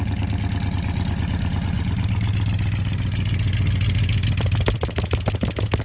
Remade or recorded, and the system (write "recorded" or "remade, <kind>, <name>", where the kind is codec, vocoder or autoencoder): recorded